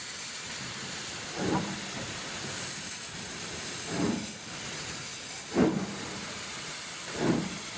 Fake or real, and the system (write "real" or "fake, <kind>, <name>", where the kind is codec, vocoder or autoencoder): fake, vocoder, BigVGAN v2